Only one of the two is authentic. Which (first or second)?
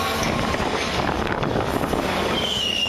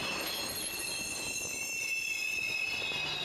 second